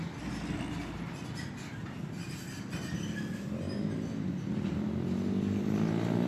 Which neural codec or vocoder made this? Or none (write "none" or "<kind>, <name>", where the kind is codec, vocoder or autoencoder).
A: none